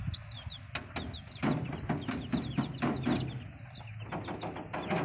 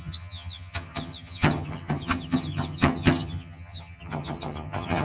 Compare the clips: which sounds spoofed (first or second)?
second